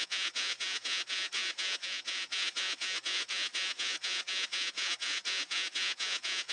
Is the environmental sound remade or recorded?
remade